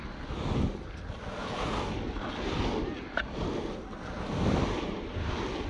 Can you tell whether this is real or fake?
real